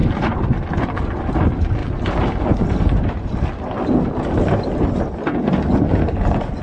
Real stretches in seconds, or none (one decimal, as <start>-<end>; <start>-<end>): 0.0-6.6